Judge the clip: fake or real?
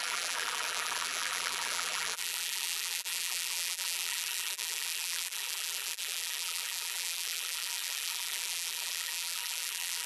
fake